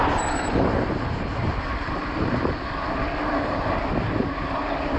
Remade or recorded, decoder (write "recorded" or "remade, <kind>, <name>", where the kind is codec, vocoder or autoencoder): recorded